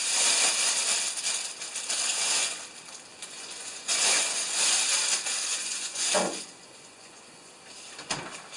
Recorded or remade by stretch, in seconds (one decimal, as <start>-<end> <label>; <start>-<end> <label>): 0.0-2.1 recorded; 2.1-2.6 remade; 2.6-3.1 recorded; 3.1-4.7 remade; 4.7-5.5 recorded; 5.5-7.5 remade; 7.5-8.6 recorded